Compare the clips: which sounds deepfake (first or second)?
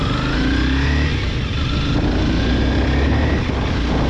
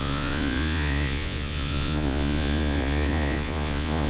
second